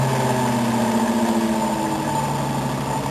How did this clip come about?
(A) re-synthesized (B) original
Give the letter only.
B